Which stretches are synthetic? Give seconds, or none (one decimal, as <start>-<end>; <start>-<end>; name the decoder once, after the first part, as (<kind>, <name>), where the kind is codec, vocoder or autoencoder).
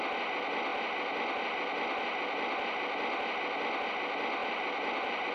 4.4-5.3 (vocoder, BigVGAN v2)